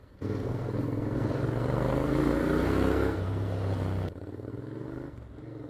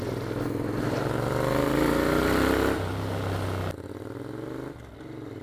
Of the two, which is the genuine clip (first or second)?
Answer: second